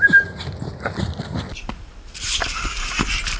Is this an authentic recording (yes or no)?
yes